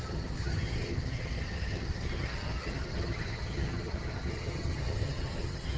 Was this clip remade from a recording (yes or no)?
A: yes